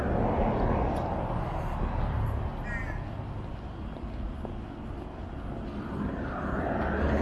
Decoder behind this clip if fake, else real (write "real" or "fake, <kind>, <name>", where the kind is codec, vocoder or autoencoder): real